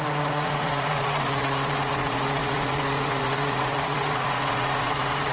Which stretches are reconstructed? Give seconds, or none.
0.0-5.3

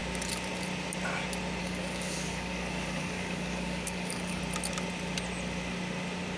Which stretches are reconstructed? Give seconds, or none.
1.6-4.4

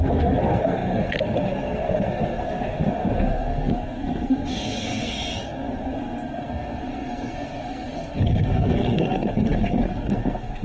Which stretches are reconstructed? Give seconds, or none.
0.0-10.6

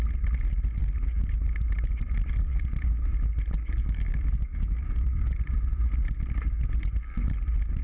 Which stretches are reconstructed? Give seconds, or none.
3.8-5.4

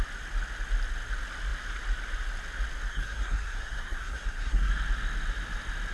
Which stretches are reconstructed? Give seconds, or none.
2.9-4.7

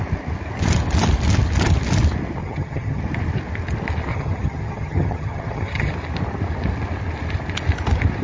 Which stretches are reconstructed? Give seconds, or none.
2.4-3.0; 4.1-5.9

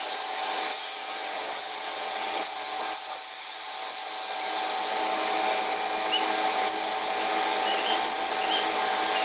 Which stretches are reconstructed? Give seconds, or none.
0.7-2.4; 7.7-8.3